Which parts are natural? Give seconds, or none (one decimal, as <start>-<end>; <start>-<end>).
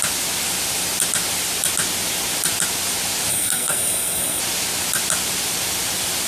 0.0-3.3; 4.4-6.3